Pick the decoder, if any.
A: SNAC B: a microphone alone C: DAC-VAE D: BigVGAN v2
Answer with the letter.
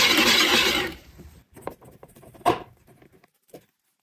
D